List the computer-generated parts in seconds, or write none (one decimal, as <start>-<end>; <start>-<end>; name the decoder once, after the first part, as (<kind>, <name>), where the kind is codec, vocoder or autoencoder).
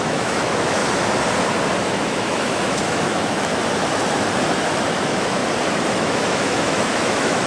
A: 0.0-0.8 (autoencoder, DAC-VAE); 1.8-3.5; 4.9-5.4; 5.9-7.5